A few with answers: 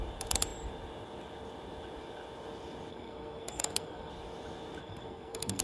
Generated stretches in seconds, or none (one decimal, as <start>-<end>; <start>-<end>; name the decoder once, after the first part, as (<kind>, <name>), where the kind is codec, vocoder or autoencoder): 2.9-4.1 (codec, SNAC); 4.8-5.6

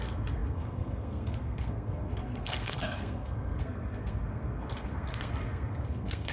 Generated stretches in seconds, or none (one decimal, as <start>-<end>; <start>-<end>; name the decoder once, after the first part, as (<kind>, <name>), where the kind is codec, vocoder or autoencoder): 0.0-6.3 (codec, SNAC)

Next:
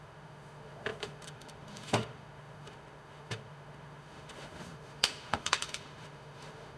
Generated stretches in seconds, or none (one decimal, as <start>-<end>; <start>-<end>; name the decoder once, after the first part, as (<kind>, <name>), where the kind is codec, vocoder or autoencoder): 0.0-6.8 (autoencoder, DAC-VAE)

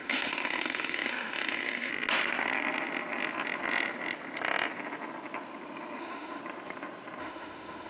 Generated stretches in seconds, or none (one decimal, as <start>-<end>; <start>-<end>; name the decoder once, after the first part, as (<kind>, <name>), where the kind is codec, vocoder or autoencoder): 0.0-1.9 (autoencoder, DAC-VAE); 6.0-6.4; 7.2-7.9

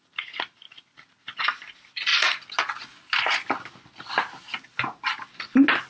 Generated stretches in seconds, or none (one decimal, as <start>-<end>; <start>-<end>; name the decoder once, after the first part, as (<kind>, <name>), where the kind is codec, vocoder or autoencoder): none